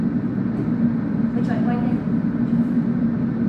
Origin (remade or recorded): recorded